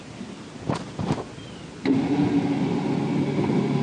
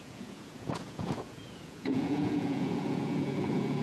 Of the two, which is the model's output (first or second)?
second